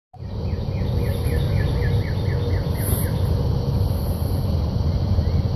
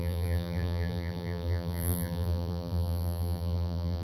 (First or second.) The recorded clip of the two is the first